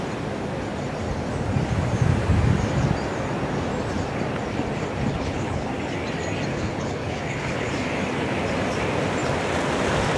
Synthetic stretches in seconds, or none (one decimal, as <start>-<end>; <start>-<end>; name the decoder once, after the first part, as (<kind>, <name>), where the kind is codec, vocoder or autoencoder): 5.1-5.7 (codec, HILCodec); 6.5-7.7